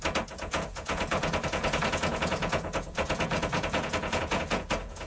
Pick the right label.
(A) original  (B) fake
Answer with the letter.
B